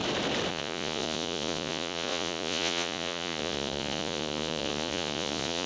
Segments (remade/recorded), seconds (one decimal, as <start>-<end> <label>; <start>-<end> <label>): 0.0-0.5 recorded; 0.5-5.7 remade